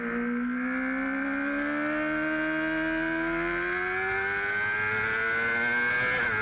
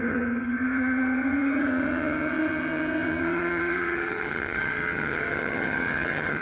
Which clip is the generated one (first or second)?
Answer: second